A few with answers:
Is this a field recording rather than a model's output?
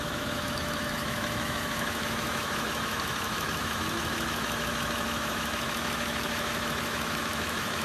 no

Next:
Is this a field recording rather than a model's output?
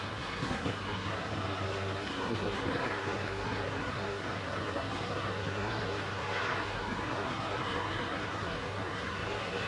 no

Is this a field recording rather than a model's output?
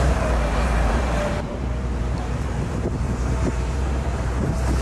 no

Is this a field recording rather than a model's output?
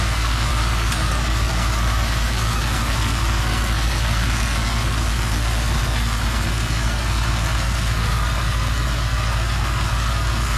no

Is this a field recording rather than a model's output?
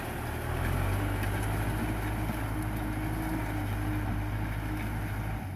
yes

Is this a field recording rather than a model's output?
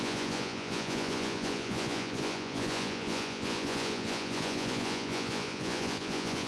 no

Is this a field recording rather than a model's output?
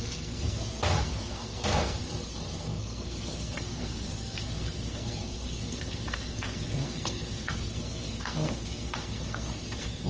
no